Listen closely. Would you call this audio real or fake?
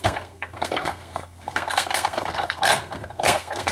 fake